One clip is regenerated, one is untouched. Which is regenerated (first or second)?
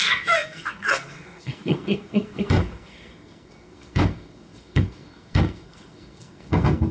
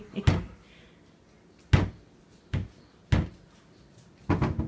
first